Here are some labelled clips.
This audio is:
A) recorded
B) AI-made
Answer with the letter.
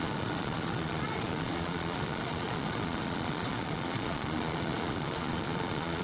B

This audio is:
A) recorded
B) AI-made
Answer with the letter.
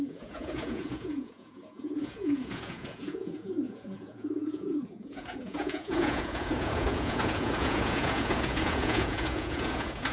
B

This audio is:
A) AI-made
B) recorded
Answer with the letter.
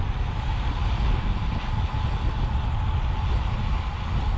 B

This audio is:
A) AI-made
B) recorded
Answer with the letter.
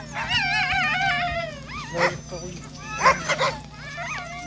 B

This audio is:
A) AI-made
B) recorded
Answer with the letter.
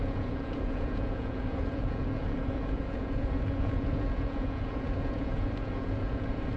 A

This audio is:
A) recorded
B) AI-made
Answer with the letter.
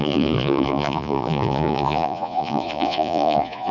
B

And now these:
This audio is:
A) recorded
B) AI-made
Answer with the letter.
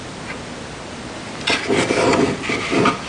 A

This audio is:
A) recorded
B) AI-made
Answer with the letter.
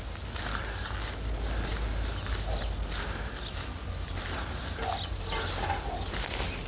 A